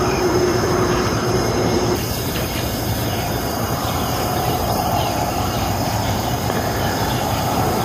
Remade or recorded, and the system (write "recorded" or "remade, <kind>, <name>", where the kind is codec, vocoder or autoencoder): remade, vocoder, BigVGAN v2